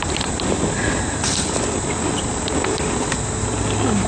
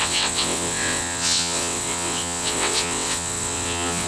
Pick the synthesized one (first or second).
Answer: second